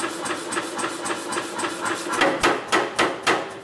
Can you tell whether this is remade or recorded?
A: recorded